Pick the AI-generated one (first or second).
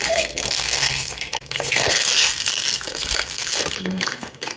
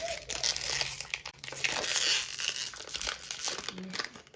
first